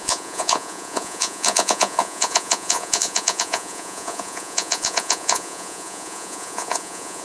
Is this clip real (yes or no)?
no